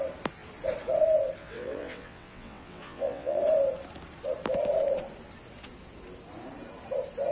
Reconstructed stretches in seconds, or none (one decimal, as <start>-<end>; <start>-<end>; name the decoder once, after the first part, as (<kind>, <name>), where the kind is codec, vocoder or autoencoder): 1.4-3.4 (vocoder, WaveNeXt)